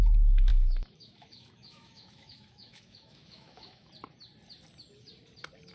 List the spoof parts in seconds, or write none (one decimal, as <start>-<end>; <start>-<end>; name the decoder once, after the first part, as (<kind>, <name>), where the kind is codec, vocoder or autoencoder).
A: 0.5-3.9 (autoencoder, DAC-VAE)